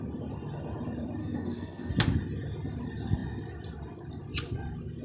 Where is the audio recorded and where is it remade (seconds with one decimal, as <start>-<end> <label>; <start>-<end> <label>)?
0.0-1.2 recorded; 1.2-1.9 remade; 1.9-5.0 recorded